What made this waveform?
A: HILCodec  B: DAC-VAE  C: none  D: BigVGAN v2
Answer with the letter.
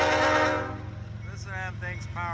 C